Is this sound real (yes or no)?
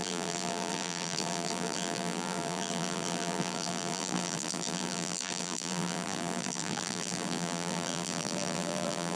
no